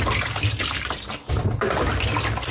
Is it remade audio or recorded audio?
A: recorded